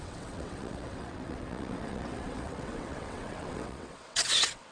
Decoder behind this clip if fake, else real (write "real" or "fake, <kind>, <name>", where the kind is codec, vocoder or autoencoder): fake, vocoder, WaveNeXt